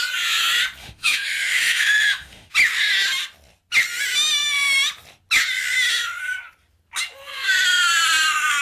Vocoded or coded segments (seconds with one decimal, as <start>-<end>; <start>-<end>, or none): 0.8-2.5